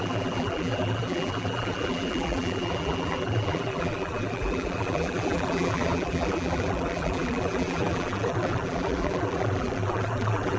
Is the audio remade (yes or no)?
yes